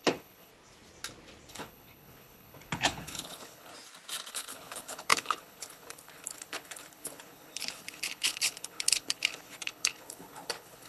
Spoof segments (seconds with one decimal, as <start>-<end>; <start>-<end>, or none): 0.0-0.5; 1.5-3.7; 4.3-10.9